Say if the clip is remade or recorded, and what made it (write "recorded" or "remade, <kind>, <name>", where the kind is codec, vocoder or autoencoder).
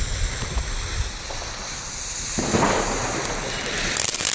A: recorded